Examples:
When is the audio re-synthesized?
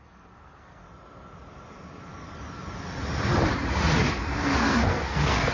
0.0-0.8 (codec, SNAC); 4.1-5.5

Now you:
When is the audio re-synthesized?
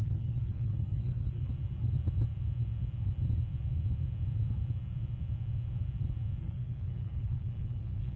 0.0-1.5 (codec, SNAC); 6.4-8.2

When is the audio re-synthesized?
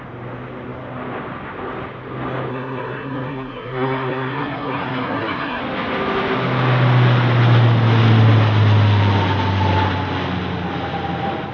2.5-5.6 (codec, SNAC)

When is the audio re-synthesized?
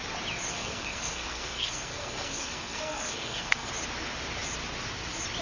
0.5-3.7 (codec, SNAC)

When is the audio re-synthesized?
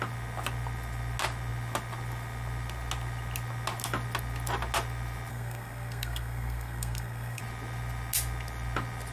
5.3-7.4 (codec, SNAC)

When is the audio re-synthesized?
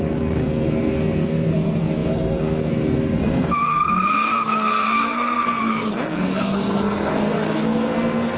0.0-8.4 (codec, SNAC)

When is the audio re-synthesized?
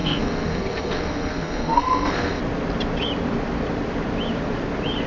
0.0-2.4 (codec, SNAC)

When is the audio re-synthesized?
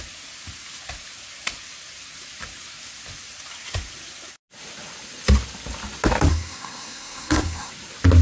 6.3-7.7 (codec, SNAC)